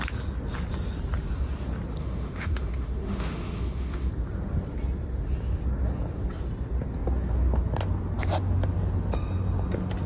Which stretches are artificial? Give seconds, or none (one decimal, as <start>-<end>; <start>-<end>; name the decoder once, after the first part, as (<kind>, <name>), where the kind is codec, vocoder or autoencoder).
2.0-4.1 (autoencoder, DAC-VAE)